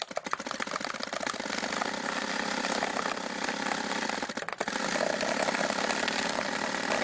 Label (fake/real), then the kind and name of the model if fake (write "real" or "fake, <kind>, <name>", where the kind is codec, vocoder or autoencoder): real